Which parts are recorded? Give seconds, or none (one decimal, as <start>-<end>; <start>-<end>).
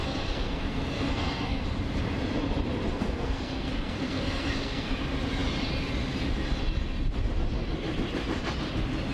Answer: 1.6-2.9; 5.0-9.1